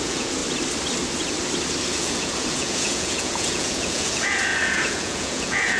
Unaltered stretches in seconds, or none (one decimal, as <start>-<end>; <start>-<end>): 0.4-1.9

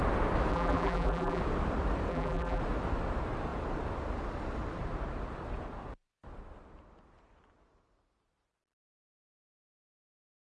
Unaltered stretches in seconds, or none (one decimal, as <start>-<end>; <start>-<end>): 0.0-0.5; 1.4-2.1; 2.6-10.6

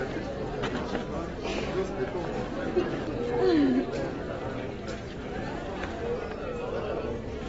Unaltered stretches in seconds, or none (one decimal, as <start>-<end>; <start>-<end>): 0.0-7.5

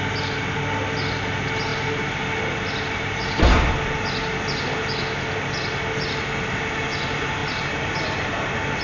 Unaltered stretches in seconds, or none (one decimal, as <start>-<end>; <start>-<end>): 0.0-7.4; 8.4-8.8

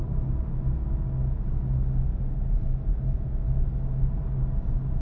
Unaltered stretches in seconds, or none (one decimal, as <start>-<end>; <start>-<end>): 0.0-5.0

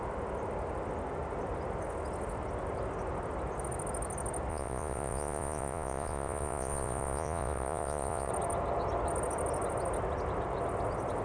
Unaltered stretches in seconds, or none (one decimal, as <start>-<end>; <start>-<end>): 0.0-4.5; 8.3-11.2

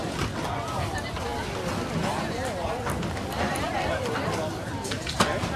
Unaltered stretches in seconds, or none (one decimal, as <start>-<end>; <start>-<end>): 0.0-5.6